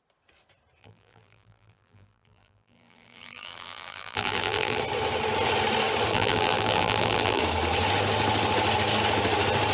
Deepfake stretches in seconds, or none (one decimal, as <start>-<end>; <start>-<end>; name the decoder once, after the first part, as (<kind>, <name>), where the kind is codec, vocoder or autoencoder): 0.8-4.8 (vocoder, BigVGAN v2); 6.1-7.4